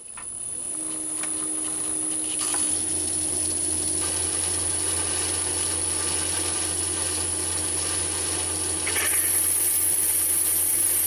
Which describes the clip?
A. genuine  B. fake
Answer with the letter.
A